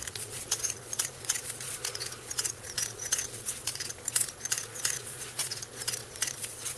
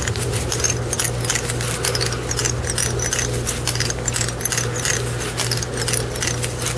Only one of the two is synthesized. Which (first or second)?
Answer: first